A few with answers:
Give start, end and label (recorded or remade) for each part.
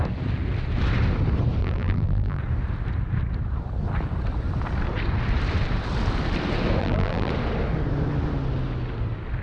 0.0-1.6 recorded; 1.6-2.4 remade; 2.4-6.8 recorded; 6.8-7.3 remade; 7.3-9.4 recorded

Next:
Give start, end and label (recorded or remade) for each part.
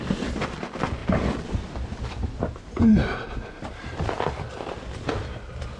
0.0-1.0 recorded; 1.0-4.5 remade; 4.5-5.8 recorded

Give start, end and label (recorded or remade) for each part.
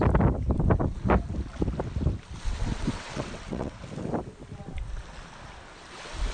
0.0-2.5 recorded; 2.5-3.8 remade; 3.8-6.3 recorded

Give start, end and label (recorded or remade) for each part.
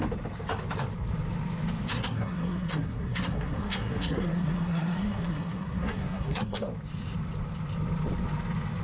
0.0-1.9 recorded; 1.9-6.7 remade; 6.7-8.8 recorded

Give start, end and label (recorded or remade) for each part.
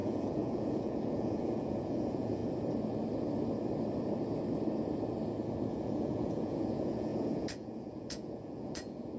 0.0-2.4 remade; 2.4-5.7 recorded; 5.7-9.2 remade